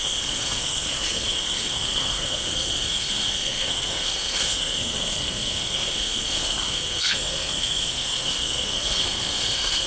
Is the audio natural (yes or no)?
no